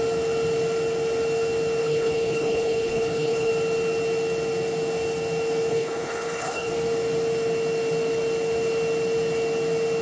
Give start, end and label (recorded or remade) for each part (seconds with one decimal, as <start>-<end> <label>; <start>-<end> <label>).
0.0-1.8 recorded; 1.8-3.5 remade; 3.5-5.7 recorded; 5.7-6.7 remade; 6.7-10.0 recorded